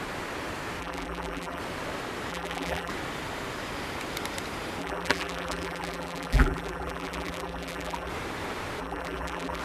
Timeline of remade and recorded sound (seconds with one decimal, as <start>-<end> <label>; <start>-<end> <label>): 0.0-0.8 recorded; 0.8-1.6 remade; 1.6-2.3 recorded; 2.3-2.9 remade; 2.9-4.8 recorded; 4.8-8.1 remade; 8.1-8.8 recorded; 8.8-9.6 remade